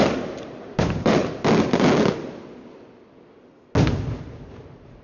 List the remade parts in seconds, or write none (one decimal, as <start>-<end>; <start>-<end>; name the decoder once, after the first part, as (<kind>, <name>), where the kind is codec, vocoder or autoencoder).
0.0-1.2 (vocoder, BigVGAN v2); 4.2-5.0